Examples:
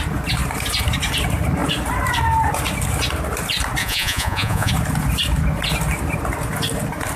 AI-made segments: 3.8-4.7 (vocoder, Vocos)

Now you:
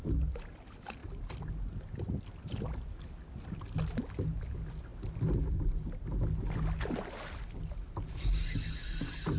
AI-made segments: none